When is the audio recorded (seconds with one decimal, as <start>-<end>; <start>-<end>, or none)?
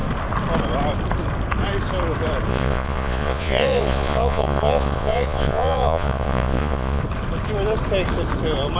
0.0-2.5; 7.0-8.8